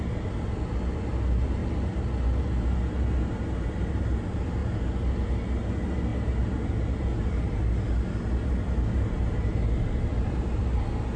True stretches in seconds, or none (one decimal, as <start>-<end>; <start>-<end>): 0.0-1.6; 2.4-11.2